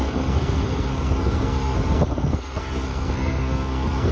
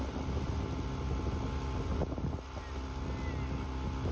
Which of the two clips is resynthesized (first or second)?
first